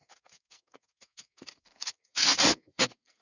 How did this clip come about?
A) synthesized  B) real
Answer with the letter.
A